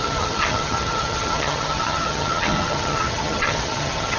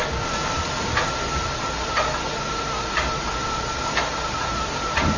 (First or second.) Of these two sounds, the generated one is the first